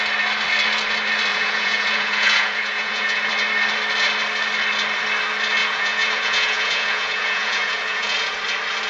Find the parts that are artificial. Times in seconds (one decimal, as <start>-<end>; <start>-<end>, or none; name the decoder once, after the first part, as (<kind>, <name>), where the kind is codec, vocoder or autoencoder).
1.3-3.3 (vocoder, Vocos); 5.6-8.4